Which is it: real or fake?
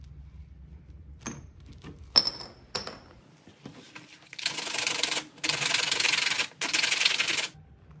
real